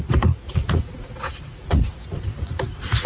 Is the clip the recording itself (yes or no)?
no